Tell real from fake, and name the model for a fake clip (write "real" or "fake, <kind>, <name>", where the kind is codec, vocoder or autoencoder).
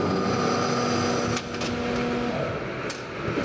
real